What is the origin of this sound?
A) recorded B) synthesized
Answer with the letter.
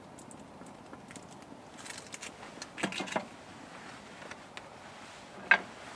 A